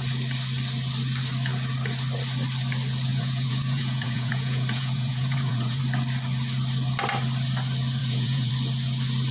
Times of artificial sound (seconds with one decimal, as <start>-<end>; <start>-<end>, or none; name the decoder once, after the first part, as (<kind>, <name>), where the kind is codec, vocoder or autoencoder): 3.1-5.8 (vocoder, Vocos); 8.0-8.5

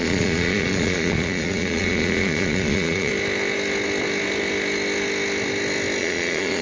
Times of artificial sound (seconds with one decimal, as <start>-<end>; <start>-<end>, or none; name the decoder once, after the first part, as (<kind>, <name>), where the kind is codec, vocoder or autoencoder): 0.0-3.1 (vocoder, Vocos); 6.0-6.6

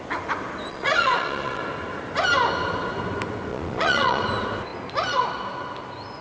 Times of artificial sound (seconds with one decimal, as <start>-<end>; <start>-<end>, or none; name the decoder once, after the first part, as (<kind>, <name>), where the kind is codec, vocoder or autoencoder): 0.7-1.6 (vocoder, Vocos); 3.5-4.2

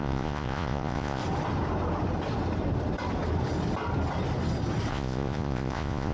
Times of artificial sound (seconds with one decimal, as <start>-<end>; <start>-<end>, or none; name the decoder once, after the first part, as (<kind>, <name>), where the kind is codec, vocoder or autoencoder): 0.0-1.2 (vocoder, Vocos); 4.9-6.1

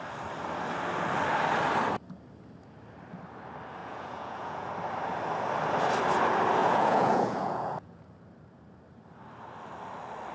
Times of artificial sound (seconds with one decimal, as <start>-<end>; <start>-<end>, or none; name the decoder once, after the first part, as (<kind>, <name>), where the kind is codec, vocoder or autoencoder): 3.8-4.7 (vocoder, Vocos); 6.6-8.0

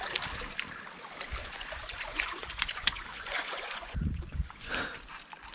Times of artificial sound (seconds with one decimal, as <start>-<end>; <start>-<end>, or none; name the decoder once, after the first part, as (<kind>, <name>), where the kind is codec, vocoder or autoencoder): 1.4-4.7 (vocoder, Vocos)

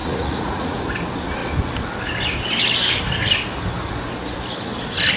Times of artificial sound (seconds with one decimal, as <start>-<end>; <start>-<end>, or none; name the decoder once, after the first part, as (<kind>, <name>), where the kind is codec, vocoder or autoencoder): 0.0-0.8 (vocoder, Vocos)

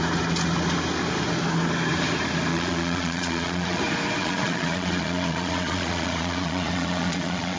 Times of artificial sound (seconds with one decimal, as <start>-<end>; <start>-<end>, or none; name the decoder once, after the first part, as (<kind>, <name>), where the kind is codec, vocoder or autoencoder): 2.5-3.8 (vocoder, Vocos); 4.2-7.6